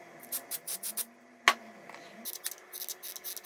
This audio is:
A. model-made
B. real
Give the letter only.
B